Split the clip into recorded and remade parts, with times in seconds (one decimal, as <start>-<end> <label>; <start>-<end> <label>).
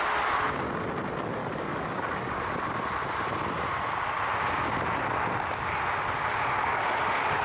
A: 0.0-1.4 recorded; 1.4-2.6 remade; 2.6-6.7 recorded; 6.7-7.4 remade